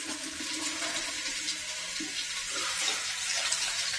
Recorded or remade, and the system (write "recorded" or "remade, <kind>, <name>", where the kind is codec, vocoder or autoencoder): remade, vocoder, BigVGAN v2